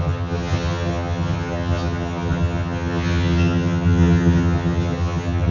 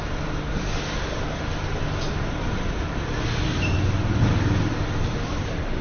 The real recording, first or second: second